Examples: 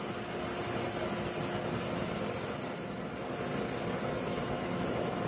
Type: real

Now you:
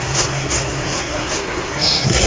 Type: fake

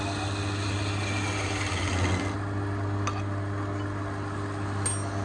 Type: real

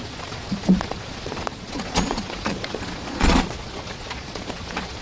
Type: fake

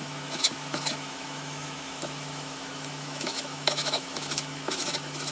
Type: fake